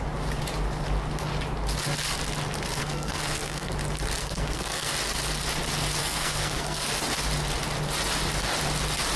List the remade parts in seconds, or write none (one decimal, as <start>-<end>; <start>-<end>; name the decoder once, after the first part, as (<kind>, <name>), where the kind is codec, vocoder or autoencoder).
2.8-3.7 (codec, SNAC); 4.2-4.9; 6.0-6.9